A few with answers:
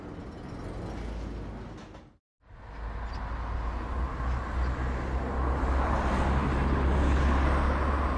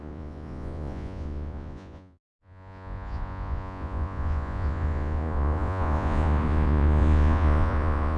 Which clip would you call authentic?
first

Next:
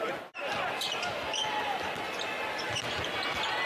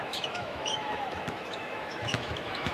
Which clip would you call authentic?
first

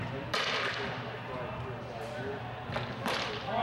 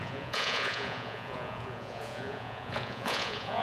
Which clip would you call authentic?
first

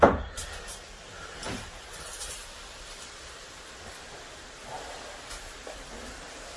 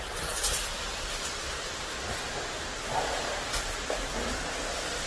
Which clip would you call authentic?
second